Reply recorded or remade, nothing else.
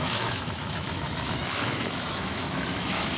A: remade